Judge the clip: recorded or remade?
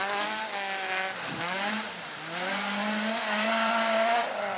remade